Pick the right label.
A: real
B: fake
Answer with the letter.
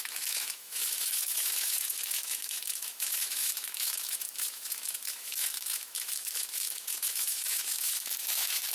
B